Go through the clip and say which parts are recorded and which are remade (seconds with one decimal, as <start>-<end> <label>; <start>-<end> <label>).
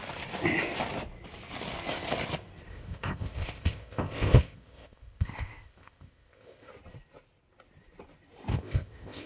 0.0-2.7 recorded; 2.7-6.7 remade; 6.7-8.5 recorded; 8.5-9.3 remade